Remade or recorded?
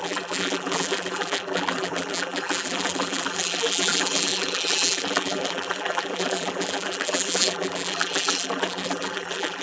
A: remade